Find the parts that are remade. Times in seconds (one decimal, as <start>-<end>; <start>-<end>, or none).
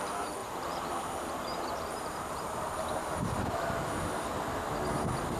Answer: 0.4-3.6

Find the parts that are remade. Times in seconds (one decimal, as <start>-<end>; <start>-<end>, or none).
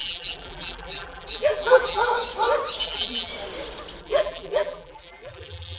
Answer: 0.0-2.1; 2.8-3.3; 4.0-5.8